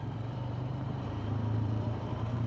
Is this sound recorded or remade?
remade